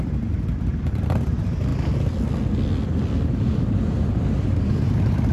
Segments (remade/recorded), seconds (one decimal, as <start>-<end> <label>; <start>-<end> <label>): 0.0-1.7 remade; 1.7-4.6 recorded; 4.6-5.3 remade